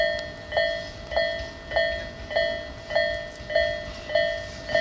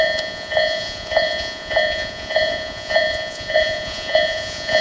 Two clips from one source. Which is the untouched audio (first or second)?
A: first